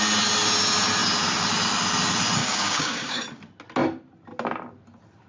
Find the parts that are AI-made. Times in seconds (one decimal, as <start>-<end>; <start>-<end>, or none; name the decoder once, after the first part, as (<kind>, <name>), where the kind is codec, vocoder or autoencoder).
2.4-3.2 (codec, DAC)